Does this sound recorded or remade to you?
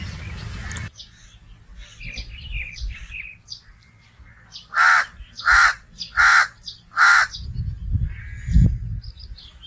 recorded